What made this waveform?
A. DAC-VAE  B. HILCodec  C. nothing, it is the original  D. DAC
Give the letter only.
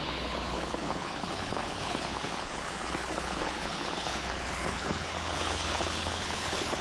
B